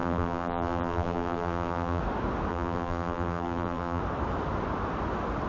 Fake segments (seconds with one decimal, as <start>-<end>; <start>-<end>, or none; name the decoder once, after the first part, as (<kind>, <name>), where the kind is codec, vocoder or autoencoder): 0.0-2.0 (vocoder, BigVGAN v2); 2.5-4.0